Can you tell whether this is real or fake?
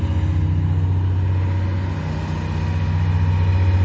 real